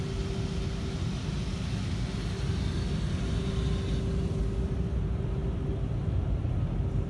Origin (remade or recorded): recorded